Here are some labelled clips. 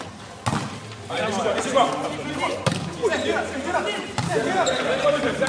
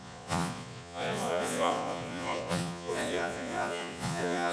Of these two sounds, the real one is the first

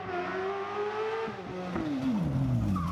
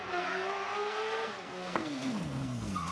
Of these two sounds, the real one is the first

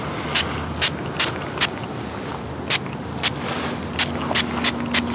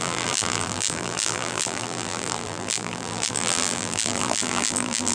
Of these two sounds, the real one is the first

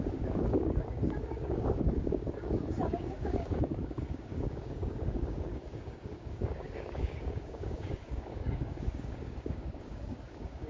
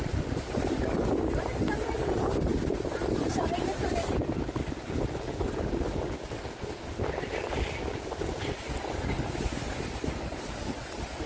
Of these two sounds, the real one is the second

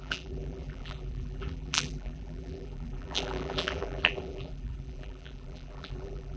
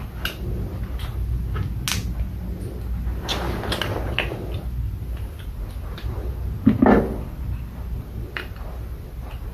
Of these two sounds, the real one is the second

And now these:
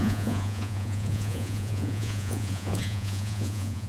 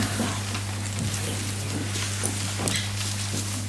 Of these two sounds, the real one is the second